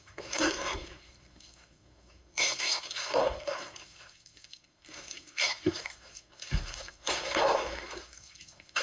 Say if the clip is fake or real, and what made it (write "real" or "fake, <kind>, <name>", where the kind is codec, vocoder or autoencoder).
fake, codec, SNAC